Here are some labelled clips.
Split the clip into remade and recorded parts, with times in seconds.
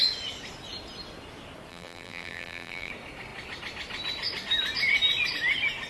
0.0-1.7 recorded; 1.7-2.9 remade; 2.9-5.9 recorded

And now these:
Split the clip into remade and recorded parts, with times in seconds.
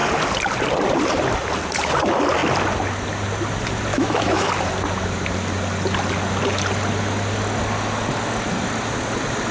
0.0-3.9 recorded; 3.9-4.5 remade; 4.5-9.5 recorded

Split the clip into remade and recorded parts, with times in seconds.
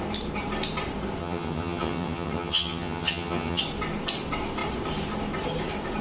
0.0-1.2 recorded; 1.2-3.6 remade; 3.6-6.0 recorded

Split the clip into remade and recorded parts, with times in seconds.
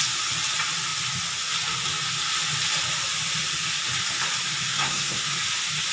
0.0-4.7 recorded; 4.7-5.3 remade; 5.3-5.9 recorded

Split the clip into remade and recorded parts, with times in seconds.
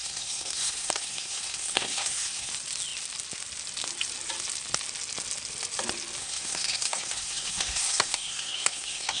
0.0-2.5 remade; 2.5-6.2 recorded; 6.2-9.2 remade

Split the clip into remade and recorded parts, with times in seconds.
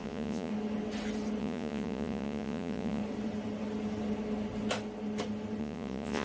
0.0-0.5 remade; 0.5-1.4 recorded; 1.4-3.0 remade; 3.0-5.6 recorded; 5.6-6.2 remade